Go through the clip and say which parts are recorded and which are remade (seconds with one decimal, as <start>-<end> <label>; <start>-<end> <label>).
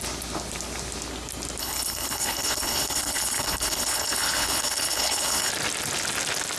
0.0-1.6 recorded; 1.6-5.5 remade; 5.5-6.6 recorded